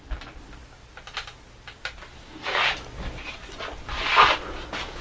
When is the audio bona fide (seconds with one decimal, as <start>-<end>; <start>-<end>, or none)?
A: 0.0-5.0